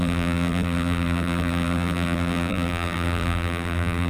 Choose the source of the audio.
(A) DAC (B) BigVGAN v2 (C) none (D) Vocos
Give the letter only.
B